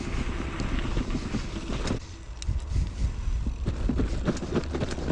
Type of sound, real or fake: real